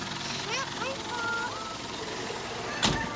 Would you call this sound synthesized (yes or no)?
no